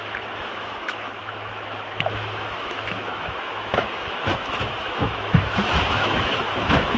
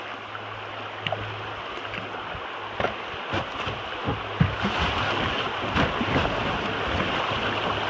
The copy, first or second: first